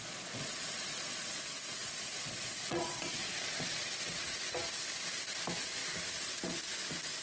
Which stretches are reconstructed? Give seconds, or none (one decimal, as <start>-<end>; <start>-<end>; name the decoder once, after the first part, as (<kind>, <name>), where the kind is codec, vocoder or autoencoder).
0.0-1.4 (vocoder, Vocos); 1.8-3.9